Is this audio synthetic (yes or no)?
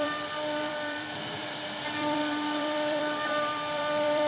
yes